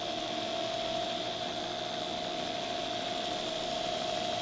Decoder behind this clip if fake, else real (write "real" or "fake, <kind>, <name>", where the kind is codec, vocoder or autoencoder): real